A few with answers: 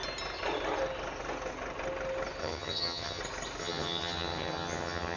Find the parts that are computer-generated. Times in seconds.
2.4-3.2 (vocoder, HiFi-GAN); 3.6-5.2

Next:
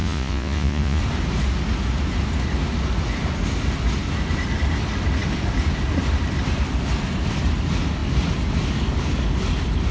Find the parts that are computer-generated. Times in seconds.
0.0-1.0 (vocoder, Vocos)